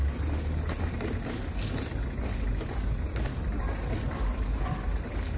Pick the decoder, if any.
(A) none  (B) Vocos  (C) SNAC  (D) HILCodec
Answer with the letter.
A